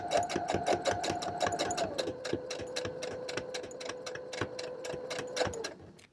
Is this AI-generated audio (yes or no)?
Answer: no